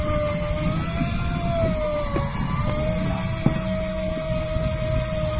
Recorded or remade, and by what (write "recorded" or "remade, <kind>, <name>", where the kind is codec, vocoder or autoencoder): recorded